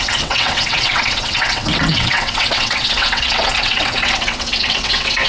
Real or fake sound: fake